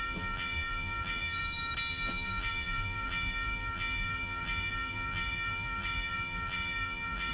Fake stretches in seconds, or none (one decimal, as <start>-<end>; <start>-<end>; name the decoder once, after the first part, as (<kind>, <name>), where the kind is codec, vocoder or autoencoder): 0.0-1.4 (vocoder, BigVGAN v2); 1.9-7.3